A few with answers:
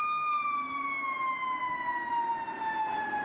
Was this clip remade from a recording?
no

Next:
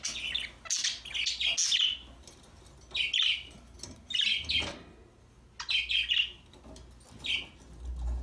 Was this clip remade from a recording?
no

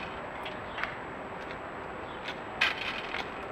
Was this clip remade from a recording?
no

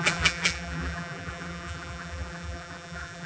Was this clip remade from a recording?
yes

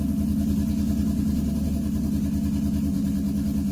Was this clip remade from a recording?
no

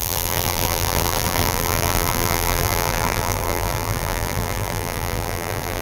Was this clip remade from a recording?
yes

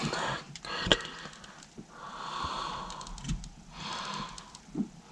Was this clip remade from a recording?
no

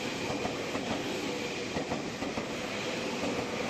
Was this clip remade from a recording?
no